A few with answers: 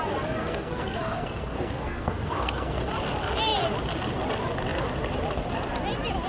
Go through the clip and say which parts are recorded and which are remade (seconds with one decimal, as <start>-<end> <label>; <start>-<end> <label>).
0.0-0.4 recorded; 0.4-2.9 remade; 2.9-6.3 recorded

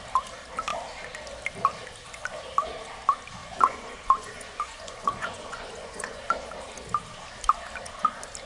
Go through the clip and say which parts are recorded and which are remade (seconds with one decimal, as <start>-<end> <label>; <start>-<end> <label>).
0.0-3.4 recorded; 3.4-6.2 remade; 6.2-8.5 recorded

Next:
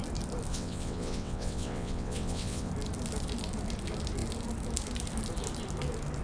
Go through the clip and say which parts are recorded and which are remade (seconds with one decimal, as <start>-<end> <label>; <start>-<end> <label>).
0.0-0.5 recorded; 0.5-2.7 remade; 2.7-6.2 recorded

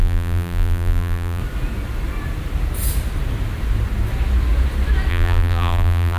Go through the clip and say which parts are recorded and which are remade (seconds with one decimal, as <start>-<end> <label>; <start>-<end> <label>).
0.0-1.4 remade; 1.4-5.1 recorded; 5.1-6.2 remade